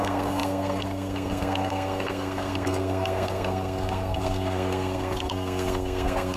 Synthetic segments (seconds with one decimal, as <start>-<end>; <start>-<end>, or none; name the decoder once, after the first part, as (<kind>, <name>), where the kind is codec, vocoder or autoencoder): 0.0-6.4 (codec, SNAC)